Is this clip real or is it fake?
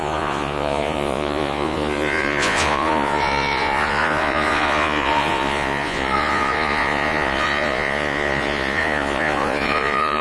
fake